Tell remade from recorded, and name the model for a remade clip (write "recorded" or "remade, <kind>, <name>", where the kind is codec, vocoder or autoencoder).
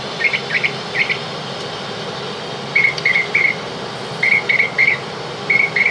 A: recorded